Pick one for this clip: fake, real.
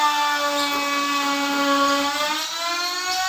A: real